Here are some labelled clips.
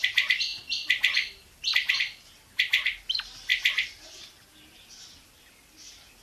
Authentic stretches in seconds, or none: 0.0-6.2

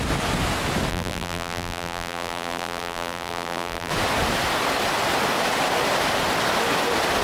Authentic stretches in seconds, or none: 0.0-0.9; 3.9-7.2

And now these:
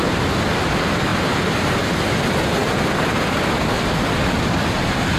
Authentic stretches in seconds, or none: 0.0-1.1; 2.1-5.2